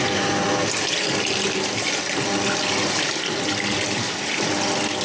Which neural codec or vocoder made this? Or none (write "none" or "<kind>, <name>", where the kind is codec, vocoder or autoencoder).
none